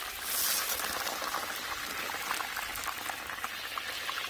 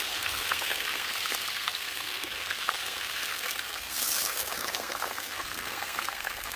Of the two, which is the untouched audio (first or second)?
first